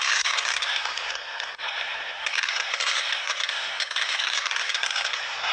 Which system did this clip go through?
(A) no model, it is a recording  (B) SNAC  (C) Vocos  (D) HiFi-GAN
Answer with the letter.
B